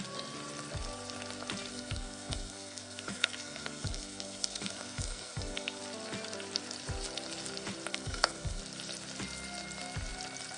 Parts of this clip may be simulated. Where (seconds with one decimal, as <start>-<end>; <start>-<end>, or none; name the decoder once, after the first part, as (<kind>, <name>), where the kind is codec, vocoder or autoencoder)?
1.7-5.8 (codec, SNAC); 7.9-8.6